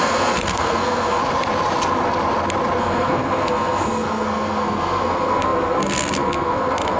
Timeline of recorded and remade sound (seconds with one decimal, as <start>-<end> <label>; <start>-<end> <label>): 0.0-1.2 remade; 1.2-2.8 recorded; 2.8-7.0 remade

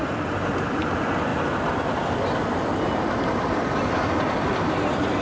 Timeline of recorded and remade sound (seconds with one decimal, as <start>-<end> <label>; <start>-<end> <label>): 0.0-5.2 recorded

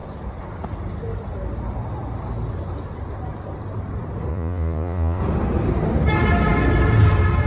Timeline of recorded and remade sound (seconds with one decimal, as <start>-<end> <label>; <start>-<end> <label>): 0.0-4.3 recorded; 4.3-5.2 remade; 5.2-7.5 recorded

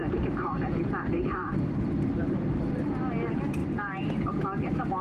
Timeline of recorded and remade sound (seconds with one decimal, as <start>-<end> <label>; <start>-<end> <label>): 0.0-3.0 remade; 3.0-3.6 recorded; 3.6-4.3 remade; 4.3-5.0 recorded